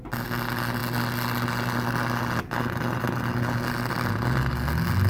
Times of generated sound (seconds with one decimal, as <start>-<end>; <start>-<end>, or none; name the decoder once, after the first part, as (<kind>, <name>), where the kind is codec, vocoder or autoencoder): none